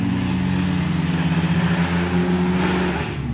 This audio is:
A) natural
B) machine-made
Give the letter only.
A